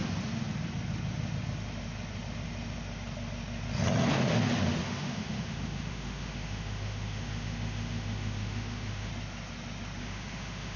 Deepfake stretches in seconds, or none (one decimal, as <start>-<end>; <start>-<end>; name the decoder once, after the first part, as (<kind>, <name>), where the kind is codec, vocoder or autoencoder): 4.8-9.1 (autoencoder, DAC-VAE); 10.0-10.8